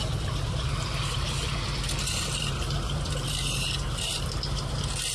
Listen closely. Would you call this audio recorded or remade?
remade